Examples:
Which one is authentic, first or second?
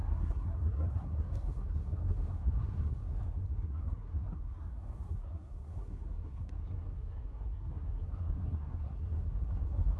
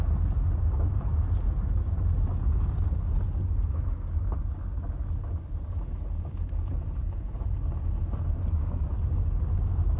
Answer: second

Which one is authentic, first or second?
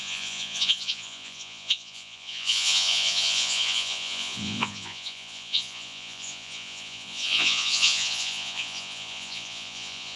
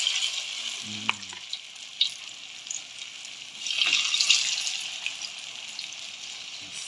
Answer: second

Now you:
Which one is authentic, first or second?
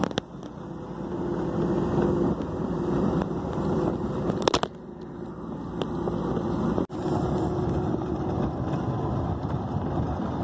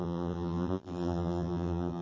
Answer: first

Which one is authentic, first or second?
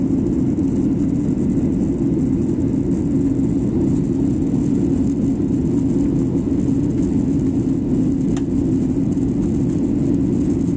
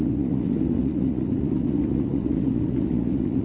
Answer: first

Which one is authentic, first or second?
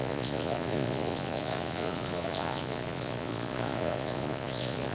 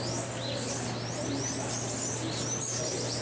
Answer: second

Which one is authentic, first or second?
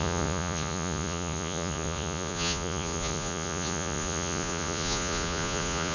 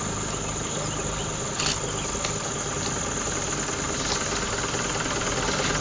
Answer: second